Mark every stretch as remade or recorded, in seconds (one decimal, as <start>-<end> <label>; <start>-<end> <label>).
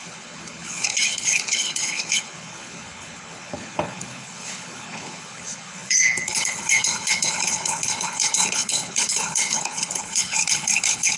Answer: 0.0-11.2 remade